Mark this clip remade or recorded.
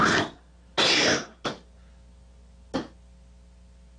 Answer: recorded